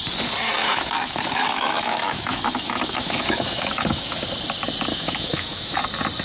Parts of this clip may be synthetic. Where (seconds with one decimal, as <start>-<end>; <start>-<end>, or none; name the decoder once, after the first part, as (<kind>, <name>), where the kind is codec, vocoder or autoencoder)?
0.6-4.2 (autoencoder, DAC-VAE); 4.9-5.8